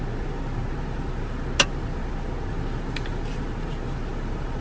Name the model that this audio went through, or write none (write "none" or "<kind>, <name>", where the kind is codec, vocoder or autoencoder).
none